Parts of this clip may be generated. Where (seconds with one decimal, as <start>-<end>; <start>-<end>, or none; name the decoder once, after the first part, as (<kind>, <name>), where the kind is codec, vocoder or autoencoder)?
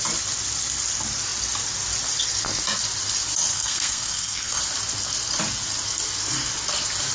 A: 3.5-4.6 (codec, SNAC)